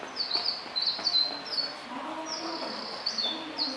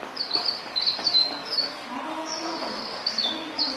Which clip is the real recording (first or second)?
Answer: first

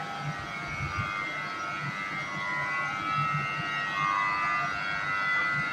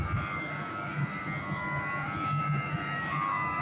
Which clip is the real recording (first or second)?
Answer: first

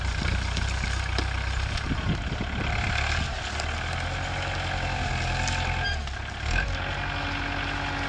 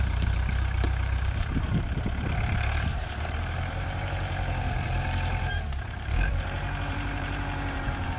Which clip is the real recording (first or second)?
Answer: first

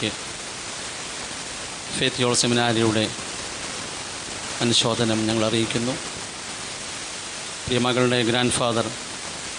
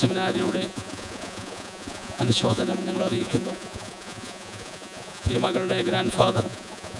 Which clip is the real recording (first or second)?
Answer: first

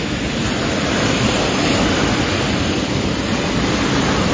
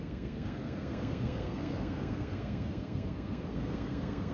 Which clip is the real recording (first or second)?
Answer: first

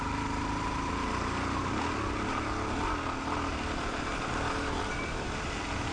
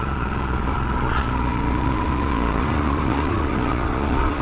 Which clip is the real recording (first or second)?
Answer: first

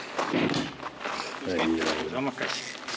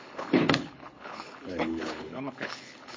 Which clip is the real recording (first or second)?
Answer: first